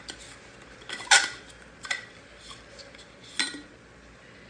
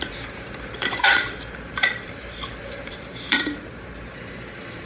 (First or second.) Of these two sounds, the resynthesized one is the second